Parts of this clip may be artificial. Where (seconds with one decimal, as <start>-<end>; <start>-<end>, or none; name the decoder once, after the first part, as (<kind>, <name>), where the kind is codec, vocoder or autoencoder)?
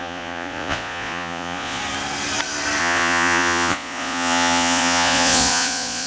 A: 0.0-1.8 (vocoder, Vocos); 2.8-6.1